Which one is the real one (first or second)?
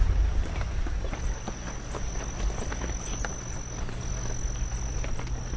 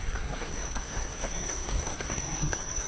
first